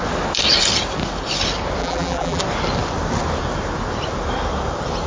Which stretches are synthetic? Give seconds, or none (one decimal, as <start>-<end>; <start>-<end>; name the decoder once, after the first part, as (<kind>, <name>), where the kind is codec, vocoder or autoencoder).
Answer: 1.8-2.4 (vocoder, BigVGAN v2)